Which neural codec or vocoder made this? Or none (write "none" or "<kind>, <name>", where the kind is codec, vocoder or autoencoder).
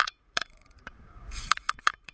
vocoder, Vocos